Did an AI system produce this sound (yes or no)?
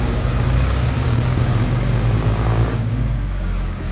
yes